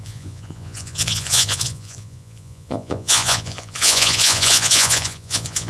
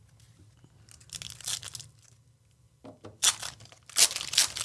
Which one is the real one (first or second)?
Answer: second